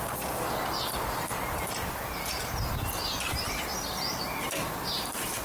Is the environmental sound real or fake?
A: real